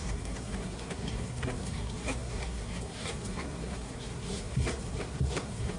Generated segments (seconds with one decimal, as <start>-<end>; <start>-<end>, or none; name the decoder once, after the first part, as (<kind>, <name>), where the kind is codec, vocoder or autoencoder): 0.0-5.8 (codec, SNAC)